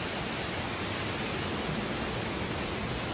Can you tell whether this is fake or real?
real